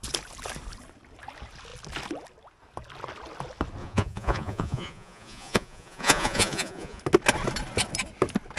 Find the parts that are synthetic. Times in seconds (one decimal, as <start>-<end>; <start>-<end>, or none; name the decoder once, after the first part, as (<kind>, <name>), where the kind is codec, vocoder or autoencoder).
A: 3.8-7.0 (vocoder, Vocos)